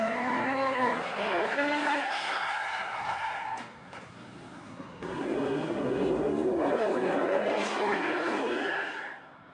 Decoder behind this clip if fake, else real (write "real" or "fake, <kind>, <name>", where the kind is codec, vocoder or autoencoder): fake, codec, SNAC